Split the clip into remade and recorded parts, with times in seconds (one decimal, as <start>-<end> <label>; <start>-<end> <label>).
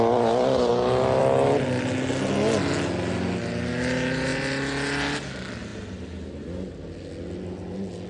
0.0-8.1 recorded